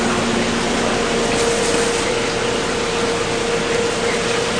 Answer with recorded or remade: recorded